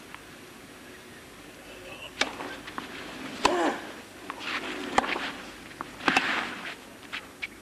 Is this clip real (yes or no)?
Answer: yes